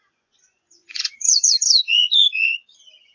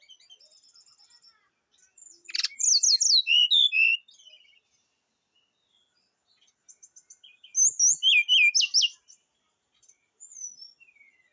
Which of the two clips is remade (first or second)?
first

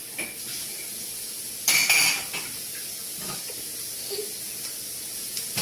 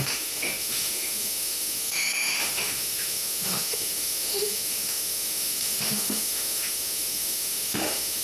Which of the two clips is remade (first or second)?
second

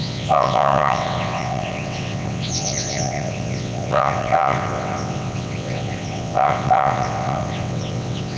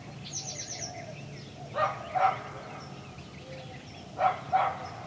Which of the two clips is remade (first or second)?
first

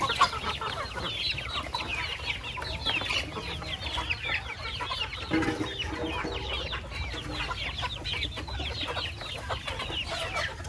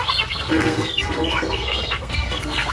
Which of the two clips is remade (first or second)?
second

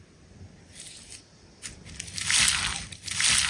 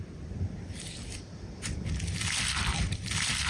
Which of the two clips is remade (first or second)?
second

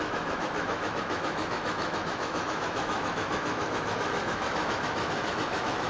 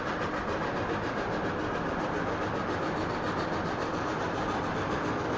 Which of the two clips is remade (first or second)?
first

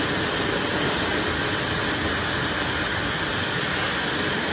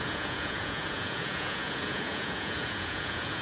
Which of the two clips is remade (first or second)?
second